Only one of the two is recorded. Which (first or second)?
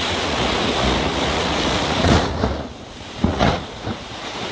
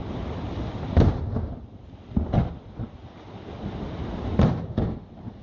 second